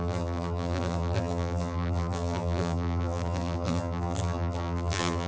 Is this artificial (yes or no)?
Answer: yes